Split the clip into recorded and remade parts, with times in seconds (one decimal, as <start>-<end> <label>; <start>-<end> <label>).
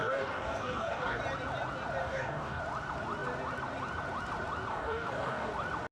0.0-1.2 remade; 1.2-2.0 recorded; 2.0-2.6 remade; 2.6-4.7 recorded; 4.7-5.5 remade; 5.5-5.9 recorded